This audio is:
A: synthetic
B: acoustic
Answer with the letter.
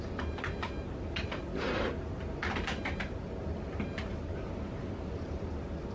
B